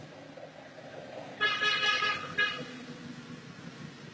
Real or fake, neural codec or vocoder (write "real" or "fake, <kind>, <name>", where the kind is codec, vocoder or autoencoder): real